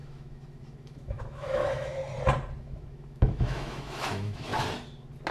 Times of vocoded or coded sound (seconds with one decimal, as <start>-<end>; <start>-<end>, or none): 0.0-2.0; 2.6-4.5